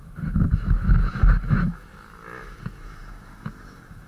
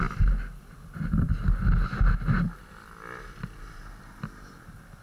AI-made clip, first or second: first